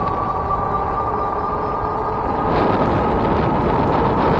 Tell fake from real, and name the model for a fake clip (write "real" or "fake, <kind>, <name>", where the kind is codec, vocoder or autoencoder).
real